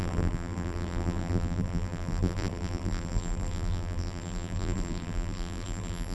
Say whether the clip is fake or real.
fake